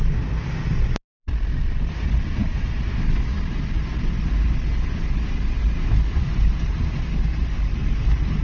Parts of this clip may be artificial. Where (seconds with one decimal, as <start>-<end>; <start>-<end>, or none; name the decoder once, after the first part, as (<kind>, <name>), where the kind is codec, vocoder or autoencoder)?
none